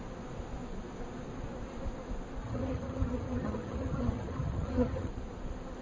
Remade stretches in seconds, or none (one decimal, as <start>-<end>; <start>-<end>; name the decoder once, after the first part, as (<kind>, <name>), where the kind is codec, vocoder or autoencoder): 2.4-5.1 (vocoder, HiFi-GAN)